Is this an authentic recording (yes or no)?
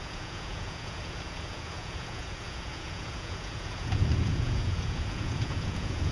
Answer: no